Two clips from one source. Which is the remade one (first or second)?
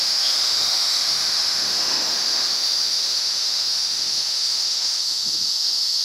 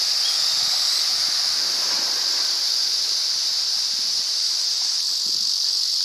first